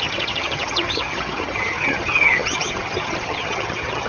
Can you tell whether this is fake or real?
fake